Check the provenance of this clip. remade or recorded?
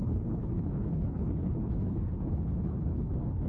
remade